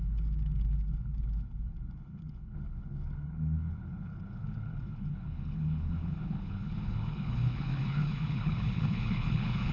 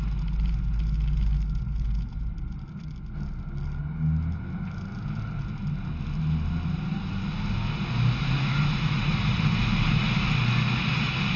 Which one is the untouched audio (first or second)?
second